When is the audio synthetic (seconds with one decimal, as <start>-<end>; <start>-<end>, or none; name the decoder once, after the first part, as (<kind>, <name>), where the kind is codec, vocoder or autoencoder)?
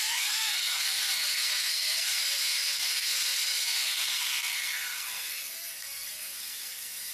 0.0-7.1 (codec, SNAC)